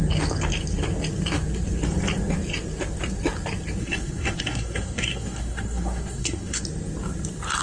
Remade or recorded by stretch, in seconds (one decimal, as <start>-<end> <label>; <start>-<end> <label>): 0.0-3.8 recorded; 3.8-6.6 remade; 6.6-7.6 recorded